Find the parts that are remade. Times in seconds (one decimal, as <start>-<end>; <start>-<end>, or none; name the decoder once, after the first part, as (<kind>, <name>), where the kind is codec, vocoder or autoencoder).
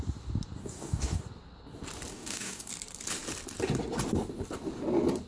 0.6-1.2 (codec, DAC); 2.1-2.7